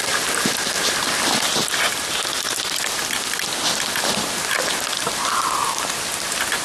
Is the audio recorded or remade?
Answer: recorded